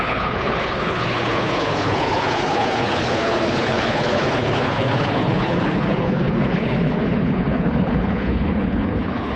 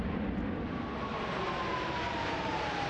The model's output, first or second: first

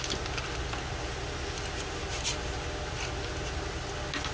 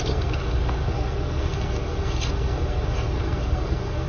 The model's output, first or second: second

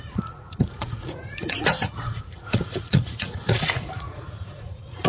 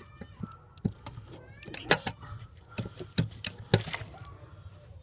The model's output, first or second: first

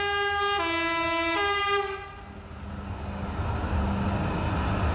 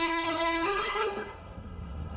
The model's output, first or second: second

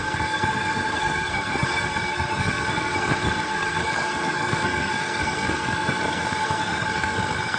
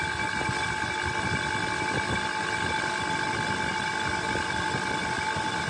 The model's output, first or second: first